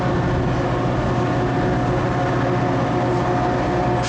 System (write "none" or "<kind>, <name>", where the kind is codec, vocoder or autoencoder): none